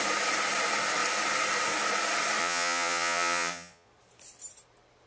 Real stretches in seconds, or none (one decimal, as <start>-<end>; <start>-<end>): 0.0-2.4; 3.9-5.1

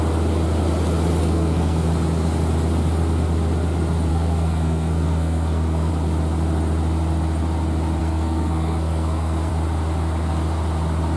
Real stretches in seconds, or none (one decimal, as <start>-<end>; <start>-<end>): 0.0-1.2; 1.9-4.1; 5.9-8.0; 9.5-11.2

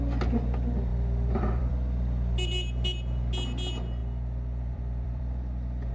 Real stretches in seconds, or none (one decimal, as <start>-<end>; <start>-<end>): 0.0-0.9; 1.7-4.0

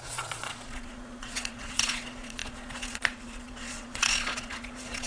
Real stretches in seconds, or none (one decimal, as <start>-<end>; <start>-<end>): none

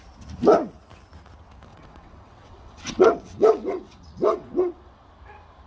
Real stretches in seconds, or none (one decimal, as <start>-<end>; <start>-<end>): 0.0-1.7; 5.1-5.7

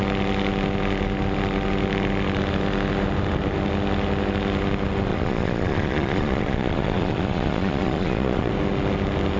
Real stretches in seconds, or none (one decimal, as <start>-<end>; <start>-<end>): 0.0-5.1; 8.5-9.4